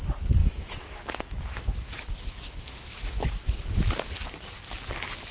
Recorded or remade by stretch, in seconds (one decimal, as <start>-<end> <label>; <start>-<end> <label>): 0.0-0.4 recorded; 0.4-3.6 remade; 3.6-5.3 recorded